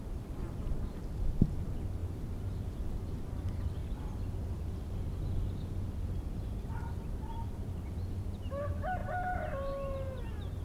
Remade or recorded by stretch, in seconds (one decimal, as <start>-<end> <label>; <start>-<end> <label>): 0.0-3.8 remade; 3.8-7.3 recorded; 7.3-10.6 remade